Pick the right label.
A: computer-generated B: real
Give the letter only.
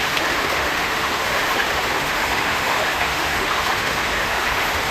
A